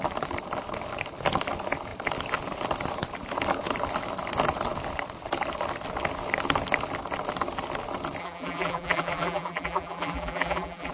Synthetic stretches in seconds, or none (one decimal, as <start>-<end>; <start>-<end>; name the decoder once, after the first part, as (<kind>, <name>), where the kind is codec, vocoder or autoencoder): 8.2-10.9 (vocoder, BigVGAN v2)